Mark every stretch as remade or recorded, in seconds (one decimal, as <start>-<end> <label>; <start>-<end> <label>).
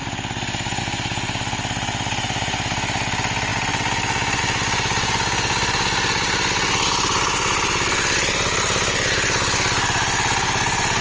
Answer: 0.0-11.0 recorded